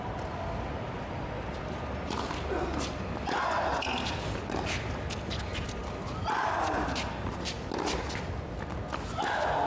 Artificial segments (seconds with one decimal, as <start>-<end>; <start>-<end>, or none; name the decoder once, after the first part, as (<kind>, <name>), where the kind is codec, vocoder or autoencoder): none